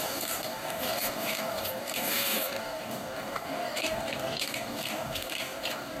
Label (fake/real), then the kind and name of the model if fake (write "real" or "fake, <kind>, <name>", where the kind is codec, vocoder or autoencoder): fake, codec, DAC